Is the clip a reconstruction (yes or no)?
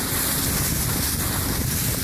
no